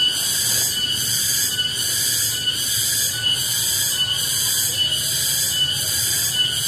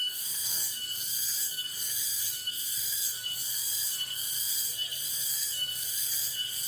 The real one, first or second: first